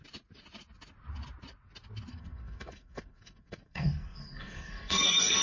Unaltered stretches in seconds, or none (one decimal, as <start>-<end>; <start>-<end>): 0.0-2.1